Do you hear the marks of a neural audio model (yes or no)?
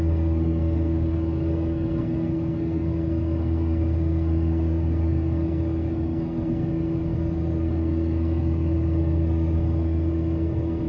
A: yes